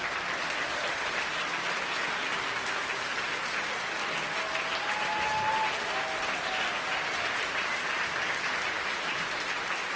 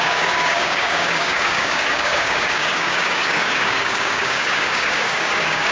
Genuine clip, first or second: first